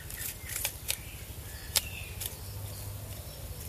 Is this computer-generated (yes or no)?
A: no